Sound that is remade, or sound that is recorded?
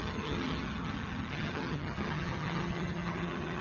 remade